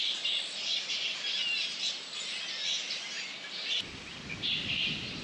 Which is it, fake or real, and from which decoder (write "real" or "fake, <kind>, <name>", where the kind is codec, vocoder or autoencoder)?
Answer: real